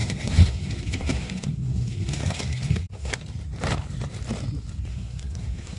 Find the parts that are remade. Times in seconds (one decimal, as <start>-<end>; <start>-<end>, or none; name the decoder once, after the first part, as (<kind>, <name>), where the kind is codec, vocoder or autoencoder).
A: 0.0-3.2 (codec, SNAC); 4.9-5.8